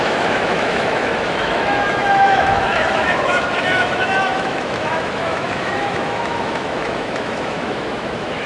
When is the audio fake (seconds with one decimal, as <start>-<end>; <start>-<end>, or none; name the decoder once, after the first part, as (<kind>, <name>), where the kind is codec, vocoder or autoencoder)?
0.0-8.5 (autoencoder, DAC-VAE)